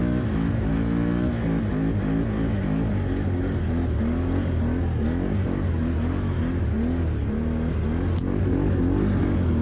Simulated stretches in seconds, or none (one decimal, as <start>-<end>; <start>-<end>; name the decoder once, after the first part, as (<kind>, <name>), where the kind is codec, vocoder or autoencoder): none